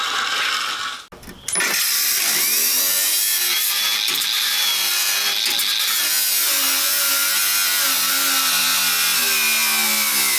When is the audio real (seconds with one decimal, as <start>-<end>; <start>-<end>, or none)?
0.0-10.4